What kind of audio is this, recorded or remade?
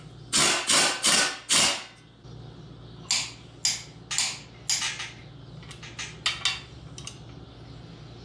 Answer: recorded